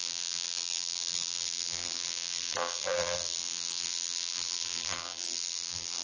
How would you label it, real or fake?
fake